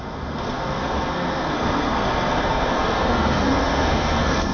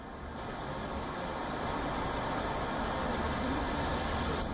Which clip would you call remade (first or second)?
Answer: first